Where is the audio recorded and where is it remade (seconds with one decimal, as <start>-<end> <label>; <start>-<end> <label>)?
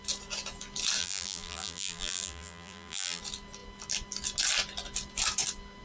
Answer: 0.0-1.0 recorded; 1.0-3.2 remade; 3.2-5.8 recorded